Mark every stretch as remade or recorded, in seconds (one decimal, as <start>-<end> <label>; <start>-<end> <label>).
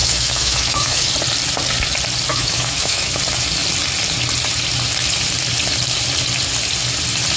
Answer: 0.0-1.1 remade; 1.1-2.3 recorded; 2.3-3.2 remade; 3.2-7.4 recorded